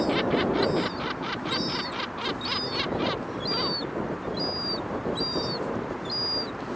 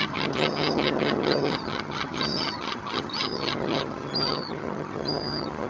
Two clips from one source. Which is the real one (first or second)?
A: first